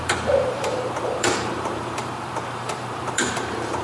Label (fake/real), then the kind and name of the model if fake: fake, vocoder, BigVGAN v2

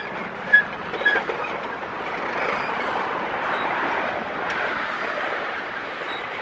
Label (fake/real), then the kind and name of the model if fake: fake, vocoder, BigVGAN v2